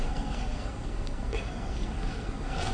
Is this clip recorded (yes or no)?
no